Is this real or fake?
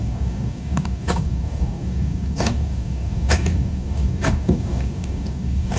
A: fake